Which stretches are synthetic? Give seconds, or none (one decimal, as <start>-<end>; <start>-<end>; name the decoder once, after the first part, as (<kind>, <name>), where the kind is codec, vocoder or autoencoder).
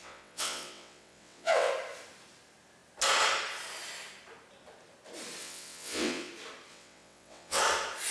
0.0-1.7 (vocoder, WaveNeXt); 5.4-6.3; 6.7-7.6